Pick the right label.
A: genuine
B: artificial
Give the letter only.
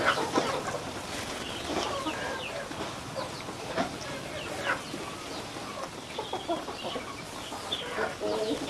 A